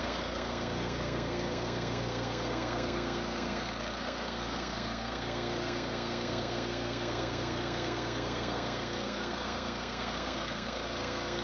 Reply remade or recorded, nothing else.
remade